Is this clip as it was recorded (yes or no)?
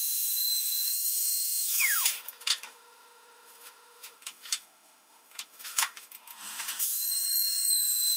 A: no